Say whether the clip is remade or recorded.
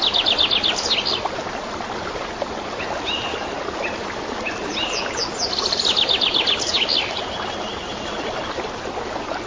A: recorded